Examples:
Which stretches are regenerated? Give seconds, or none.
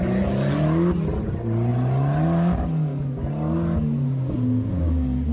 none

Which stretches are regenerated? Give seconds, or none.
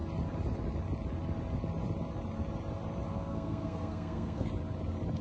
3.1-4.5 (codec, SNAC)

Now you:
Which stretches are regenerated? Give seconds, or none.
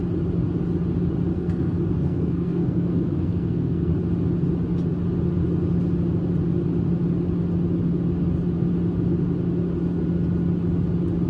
1.3-3.9 (codec, SNAC)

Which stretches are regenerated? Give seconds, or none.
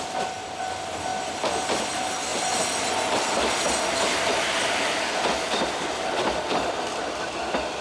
none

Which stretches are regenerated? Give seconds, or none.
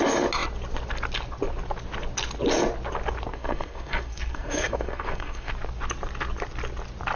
3.3-5.5 (codec, SNAC)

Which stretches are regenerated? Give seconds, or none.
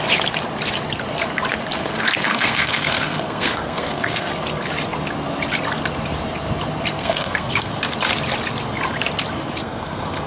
1.8-4.3 (codec, SNAC); 6.9-7.7; 9.6-10.3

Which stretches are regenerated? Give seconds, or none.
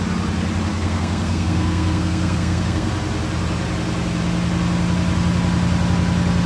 0.7-2.9 (codec, SNAC)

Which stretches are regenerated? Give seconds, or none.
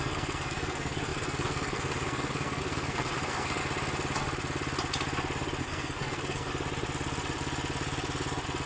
0.0-3.6 (codec, SNAC); 5.6-6.5